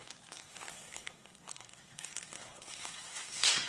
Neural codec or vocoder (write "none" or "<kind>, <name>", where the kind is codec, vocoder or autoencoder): codec, SNAC